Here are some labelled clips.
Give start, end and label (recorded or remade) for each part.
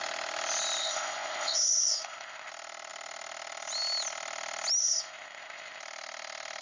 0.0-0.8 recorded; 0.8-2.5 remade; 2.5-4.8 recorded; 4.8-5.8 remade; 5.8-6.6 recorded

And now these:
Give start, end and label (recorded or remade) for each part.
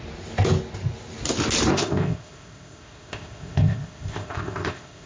0.0-1.7 recorded; 1.7-5.1 remade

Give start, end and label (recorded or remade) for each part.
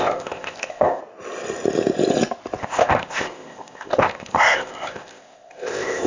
0.0-1.0 remade; 1.0-2.6 recorded; 2.6-6.1 remade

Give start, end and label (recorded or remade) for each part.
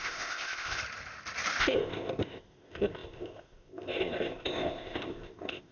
0.0-0.8 remade; 0.8-1.6 recorded; 1.6-5.7 remade